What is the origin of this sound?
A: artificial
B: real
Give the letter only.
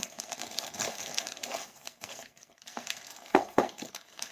A